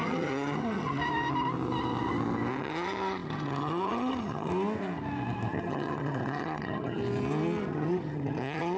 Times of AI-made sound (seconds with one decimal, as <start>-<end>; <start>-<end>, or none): 0.0-1.0; 2.6-4.5; 5.5-7.0; 7.6-8.8